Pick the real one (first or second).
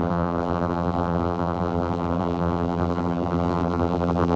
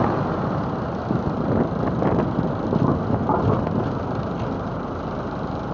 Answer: second